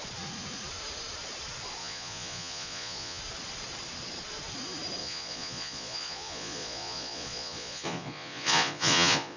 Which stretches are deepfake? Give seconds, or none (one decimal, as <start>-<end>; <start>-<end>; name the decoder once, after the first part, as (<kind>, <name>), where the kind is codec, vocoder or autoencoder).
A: 1.8-3.2 (vocoder, Vocos); 5.0-9.4